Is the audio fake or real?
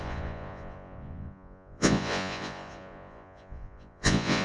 fake